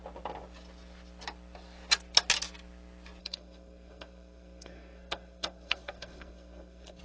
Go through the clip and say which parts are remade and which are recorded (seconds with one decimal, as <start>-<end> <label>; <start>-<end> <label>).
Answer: 0.0-3.2 recorded; 3.2-7.0 remade